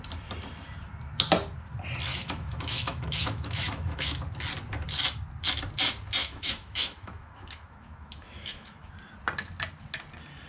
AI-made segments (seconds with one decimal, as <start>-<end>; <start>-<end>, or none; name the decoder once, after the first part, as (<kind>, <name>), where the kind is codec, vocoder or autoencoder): 2.1-4.2 (autoencoder, DAC-VAE); 6.2-8.9